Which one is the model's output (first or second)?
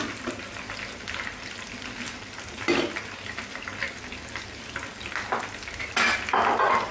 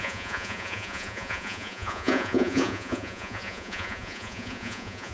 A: second